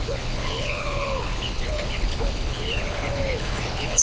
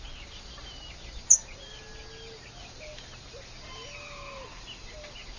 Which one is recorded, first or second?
second